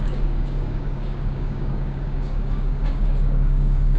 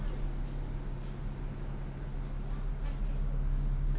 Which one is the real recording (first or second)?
second